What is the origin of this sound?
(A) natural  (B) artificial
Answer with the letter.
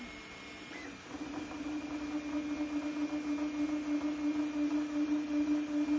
A